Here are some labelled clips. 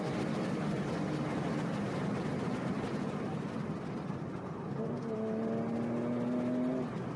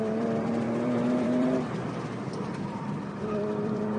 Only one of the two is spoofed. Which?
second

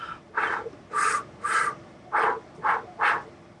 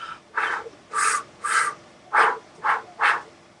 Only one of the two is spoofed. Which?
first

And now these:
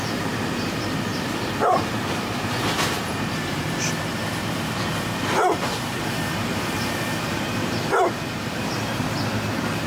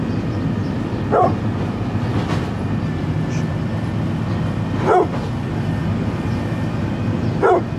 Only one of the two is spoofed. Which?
first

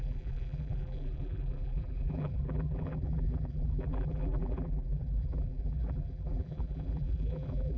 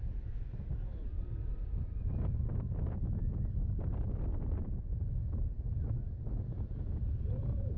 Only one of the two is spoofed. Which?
first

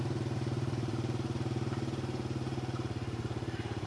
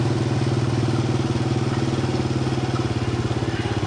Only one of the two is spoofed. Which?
first